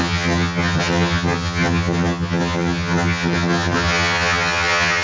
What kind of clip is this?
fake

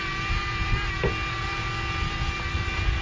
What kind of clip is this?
real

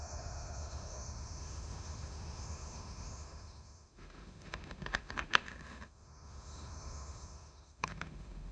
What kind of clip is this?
fake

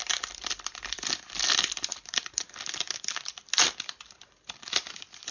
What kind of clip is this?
real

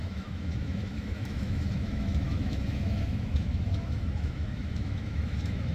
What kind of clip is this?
fake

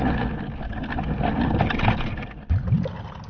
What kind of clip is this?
real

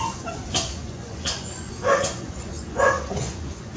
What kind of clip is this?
fake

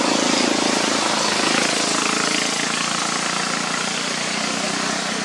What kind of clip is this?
real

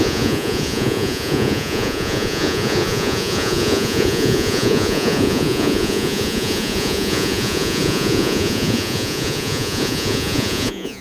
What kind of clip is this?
fake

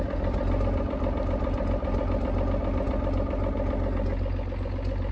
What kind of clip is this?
real